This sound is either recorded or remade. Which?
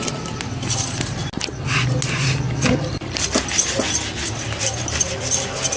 recorded